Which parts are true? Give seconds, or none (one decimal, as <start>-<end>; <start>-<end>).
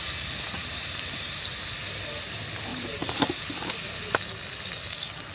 0.0-0.6; 1.5-2.7; 3.2-5.3